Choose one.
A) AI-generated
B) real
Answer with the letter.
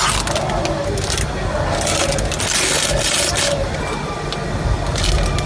B